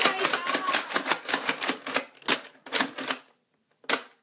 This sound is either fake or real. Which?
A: real